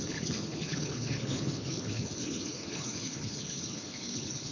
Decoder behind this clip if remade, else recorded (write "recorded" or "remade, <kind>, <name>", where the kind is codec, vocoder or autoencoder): remade, codec, HILCodec